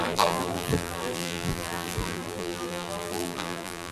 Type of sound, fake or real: fake